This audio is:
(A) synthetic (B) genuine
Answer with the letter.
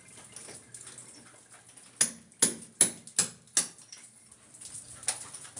B